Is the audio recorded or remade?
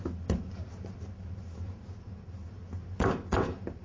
recorded